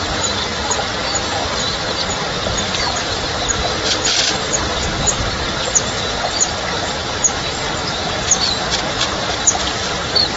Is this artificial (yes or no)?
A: no